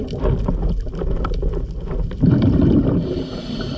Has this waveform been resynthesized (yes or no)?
no